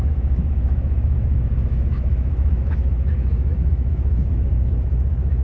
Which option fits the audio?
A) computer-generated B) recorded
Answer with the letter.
A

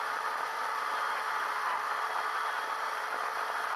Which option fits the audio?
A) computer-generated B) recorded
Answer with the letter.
B